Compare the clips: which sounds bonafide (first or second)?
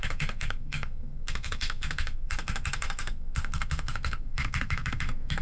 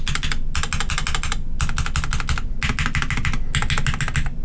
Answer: second